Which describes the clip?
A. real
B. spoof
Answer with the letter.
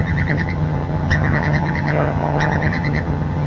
B